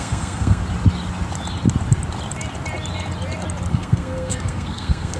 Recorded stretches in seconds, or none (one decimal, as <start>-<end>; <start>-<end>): 0.6-3.7